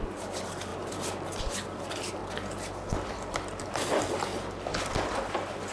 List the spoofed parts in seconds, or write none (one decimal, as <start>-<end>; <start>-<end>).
0.0-2.2; 3.6-4.3; 5.3-5.7